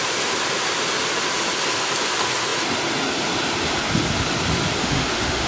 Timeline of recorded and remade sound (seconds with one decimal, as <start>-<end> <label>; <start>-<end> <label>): 0.0-4.8 recorded; 4.8-5.5 remade